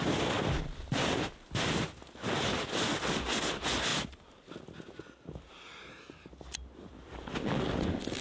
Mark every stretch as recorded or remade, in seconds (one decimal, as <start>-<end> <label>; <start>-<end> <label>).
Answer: 0.0-8.2 recorded